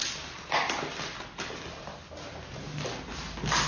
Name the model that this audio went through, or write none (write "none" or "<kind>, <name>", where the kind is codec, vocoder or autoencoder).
none